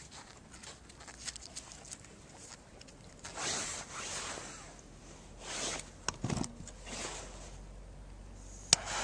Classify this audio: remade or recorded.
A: recorded